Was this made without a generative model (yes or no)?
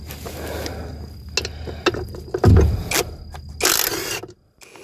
yes